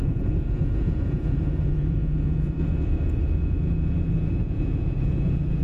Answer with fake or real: fake